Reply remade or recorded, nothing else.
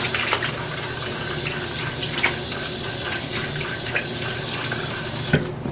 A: recorded